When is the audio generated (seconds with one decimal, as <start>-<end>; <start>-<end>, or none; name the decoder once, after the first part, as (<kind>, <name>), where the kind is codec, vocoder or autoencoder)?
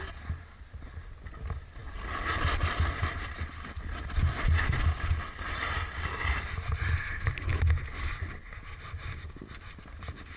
none